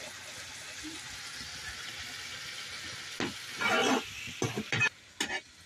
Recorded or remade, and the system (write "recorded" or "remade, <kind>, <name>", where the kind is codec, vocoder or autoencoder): recorded